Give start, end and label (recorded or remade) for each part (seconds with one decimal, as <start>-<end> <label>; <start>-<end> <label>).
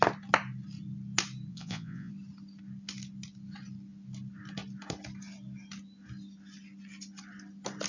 0.0-1.5 recorded; 1.5-2.1 remade; 2.1-7.9 recorded